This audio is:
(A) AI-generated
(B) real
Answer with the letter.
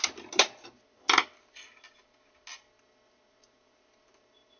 B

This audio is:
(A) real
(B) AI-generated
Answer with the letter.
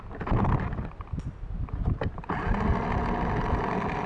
A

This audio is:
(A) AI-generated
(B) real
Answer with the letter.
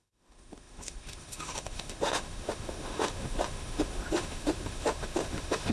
A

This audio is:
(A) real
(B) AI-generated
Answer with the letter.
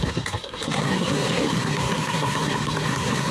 B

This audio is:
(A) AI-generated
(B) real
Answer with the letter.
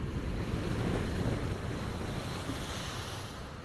B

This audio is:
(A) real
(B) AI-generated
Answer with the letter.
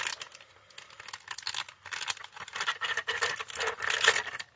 A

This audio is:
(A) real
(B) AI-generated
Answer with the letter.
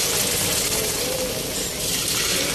A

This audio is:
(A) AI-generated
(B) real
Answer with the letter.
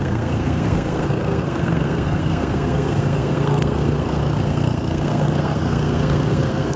A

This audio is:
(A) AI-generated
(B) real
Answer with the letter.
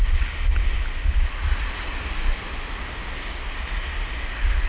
B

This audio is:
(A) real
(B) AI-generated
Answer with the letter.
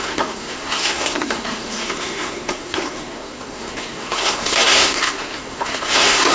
B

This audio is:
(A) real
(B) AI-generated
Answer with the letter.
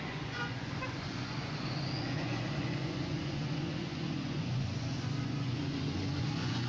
B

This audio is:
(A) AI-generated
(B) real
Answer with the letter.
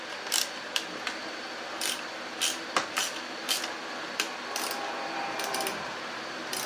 B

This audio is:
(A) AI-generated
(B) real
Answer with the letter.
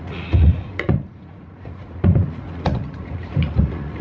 A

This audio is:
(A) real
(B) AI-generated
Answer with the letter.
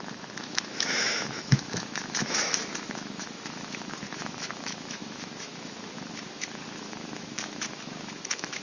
B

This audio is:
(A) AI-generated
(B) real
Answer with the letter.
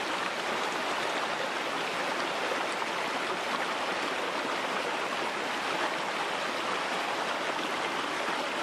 B